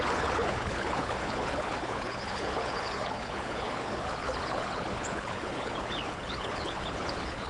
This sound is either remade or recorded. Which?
remade